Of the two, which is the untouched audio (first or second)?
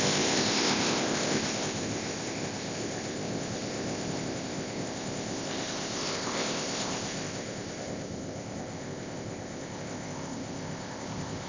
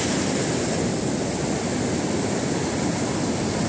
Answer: second